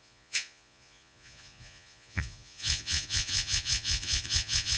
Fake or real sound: fake